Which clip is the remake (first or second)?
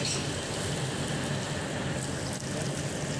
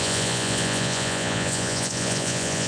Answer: second